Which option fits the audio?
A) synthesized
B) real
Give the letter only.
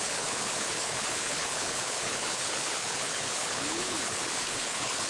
A